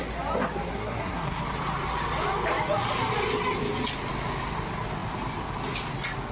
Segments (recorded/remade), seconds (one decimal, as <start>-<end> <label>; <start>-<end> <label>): 0.0-0.7 recorded; 0.7-1.4 remade; 1.4-6.3 recorded